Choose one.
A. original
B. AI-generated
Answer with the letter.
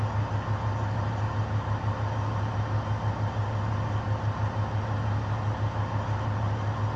A